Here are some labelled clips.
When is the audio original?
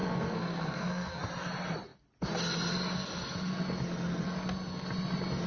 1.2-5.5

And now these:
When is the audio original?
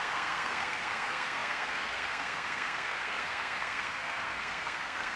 none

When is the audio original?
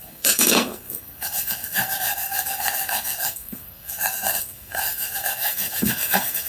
none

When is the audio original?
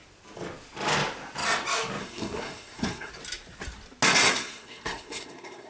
0.0-2.0; 3.1-4.3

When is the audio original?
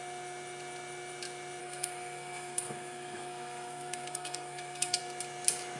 0.0-1.6; 5.0-5.8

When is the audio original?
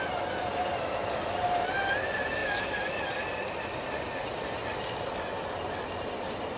0.0-6.6